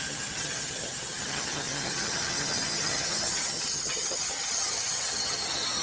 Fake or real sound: fake